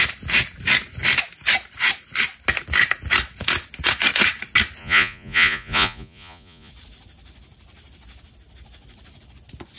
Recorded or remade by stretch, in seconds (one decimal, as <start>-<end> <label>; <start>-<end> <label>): 0.0-4.8 recorded; 4.8-6.7 remade; 6.7-9.8 recorded